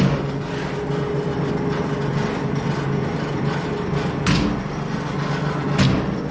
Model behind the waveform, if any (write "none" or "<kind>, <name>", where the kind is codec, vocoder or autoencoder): none